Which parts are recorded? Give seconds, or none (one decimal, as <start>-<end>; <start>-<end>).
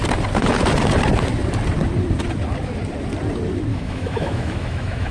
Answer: 0.0-3.7